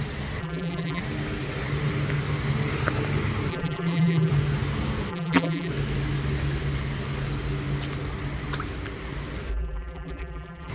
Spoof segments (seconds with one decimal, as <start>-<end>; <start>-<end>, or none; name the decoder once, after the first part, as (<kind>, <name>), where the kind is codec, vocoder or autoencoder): 0.4-1.0 (vocoder, BigVGAN v2); 3.5-4.3; 5.1-5.7; 9.5-10.7